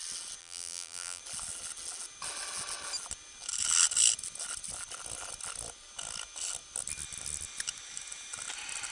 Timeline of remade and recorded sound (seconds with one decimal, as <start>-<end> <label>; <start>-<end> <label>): 0.0-0.4 recorded; 0.4-1.2 remade; 1.2-8.9 recorded